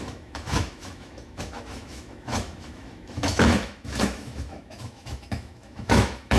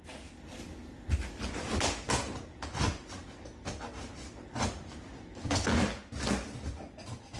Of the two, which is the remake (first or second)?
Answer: first